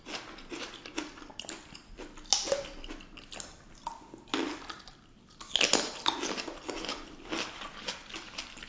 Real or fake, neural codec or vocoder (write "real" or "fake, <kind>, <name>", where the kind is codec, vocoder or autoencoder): real